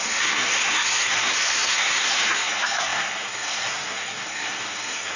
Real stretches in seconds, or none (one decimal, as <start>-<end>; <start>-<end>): none